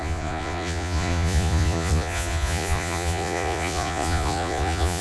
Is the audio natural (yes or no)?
no